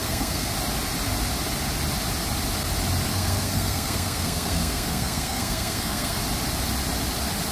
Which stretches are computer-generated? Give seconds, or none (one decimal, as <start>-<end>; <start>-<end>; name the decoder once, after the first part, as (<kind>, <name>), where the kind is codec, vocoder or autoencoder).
0.0-0.5 (codec, SNAC); 3.1-6.2